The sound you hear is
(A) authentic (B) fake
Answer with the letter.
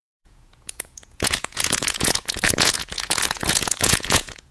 B